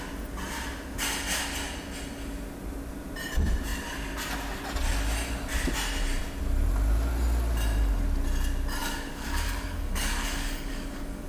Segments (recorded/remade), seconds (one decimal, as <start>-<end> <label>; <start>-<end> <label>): 0.0-8.8 recorded; 8.8-11.3 remade